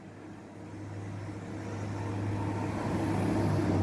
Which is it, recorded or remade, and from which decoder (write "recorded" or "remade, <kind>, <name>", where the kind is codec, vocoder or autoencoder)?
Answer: recorded